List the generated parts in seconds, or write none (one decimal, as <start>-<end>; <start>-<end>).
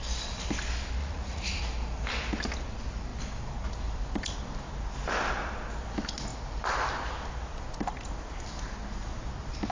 1.0-1.6